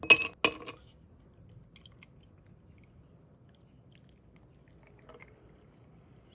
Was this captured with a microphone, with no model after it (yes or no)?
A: yes